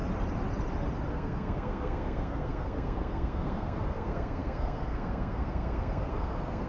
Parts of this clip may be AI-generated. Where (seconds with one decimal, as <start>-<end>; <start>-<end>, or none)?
1.1-6.7